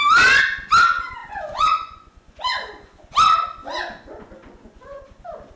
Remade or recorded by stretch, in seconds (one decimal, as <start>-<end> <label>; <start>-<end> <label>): 0.0-1.2 recorded; 1.2-3.1 remade; 3.1-3.6 recorded; 3.6-5.0 remade; 5.0-5.6 recorded